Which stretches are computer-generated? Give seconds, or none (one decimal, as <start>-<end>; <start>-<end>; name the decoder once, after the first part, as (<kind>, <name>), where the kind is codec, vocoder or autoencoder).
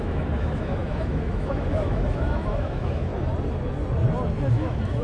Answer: 0.0-3.1 (autoencoder, DAC-VAE); 4.5-5.0